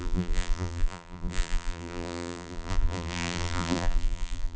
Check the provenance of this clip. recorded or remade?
remade